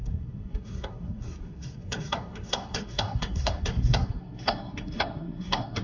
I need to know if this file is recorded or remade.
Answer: remade